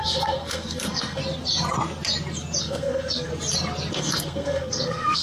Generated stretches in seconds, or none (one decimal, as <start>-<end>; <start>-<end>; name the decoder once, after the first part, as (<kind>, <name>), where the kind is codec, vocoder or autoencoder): 0.0-1.2 (codec, SNAC); 2.6-3.3; 3.9-5.2